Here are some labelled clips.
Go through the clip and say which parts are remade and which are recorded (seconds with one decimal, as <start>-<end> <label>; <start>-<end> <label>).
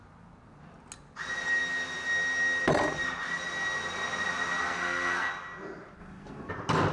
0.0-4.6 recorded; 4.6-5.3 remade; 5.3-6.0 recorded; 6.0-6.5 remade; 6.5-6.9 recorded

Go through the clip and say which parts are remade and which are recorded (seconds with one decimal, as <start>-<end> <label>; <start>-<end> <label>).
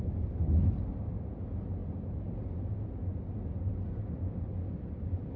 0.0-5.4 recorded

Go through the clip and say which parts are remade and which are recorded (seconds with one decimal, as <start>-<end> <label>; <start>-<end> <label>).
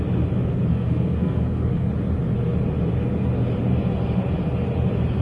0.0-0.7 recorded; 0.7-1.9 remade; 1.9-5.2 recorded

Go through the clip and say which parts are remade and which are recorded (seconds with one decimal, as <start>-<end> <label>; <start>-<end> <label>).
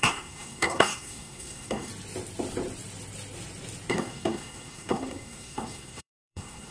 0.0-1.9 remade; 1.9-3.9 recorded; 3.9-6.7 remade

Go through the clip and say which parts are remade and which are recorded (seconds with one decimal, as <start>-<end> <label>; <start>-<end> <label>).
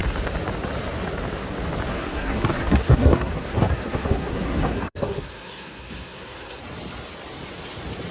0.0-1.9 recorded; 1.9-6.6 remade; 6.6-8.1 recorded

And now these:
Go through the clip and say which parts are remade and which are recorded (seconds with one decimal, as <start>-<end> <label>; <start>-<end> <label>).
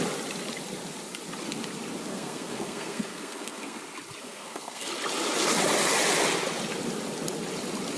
0.0-2.1 recorded; 2.1-3.8 remade; 3.8-4.2 recorded; 4.2-4.9 remade; 4.9-8.0 recorded